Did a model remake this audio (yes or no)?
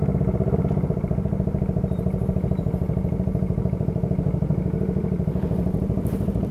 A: yes